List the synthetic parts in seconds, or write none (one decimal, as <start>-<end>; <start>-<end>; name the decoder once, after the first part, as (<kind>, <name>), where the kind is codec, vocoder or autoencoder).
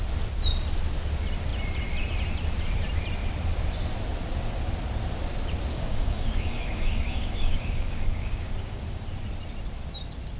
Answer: 5.7-8.8 (codec, DAC)